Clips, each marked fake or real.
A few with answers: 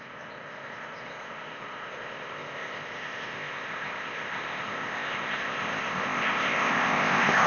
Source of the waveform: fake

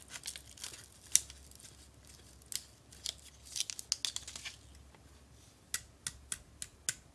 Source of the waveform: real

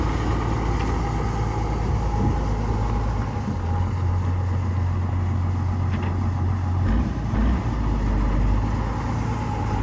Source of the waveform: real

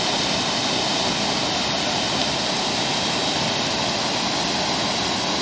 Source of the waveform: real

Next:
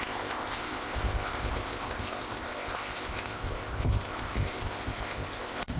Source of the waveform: fake